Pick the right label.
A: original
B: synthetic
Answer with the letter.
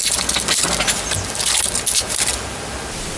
A